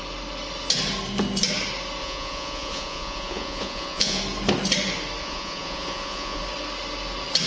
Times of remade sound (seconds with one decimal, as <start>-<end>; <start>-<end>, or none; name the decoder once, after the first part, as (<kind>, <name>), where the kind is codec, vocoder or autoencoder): 2.0-4.2 (vocoder, Vocos); 5.2-6.4